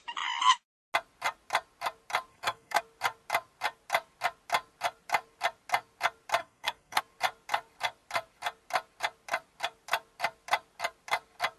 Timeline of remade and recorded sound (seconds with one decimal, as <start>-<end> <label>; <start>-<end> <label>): 0.0-2.3 recorded; 2.3-2.8 remade; 2.8-6.4 recorded; 6.4-7.0 remade; 7.0-11.6 recorded